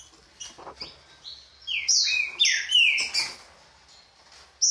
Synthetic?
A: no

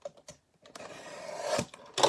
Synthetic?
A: no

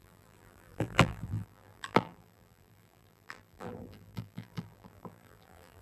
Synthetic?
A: yes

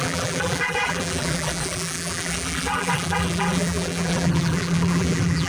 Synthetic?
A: yes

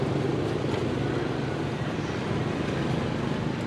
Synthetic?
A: no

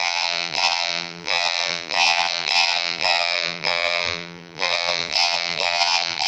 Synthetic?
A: yes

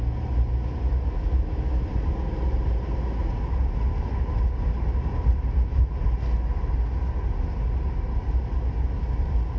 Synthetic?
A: no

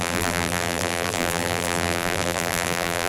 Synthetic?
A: yes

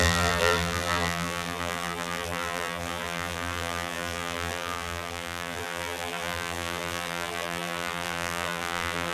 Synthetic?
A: yes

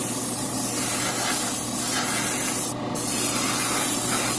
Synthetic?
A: no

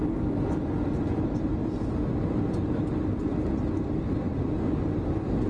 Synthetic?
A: no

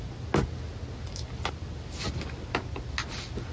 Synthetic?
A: no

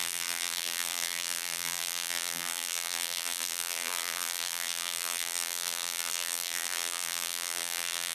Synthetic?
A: yes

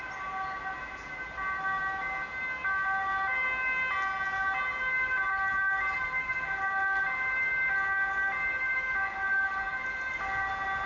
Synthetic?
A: no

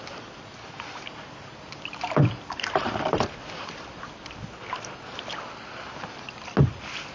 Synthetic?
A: no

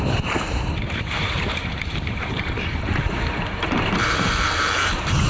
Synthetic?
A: yes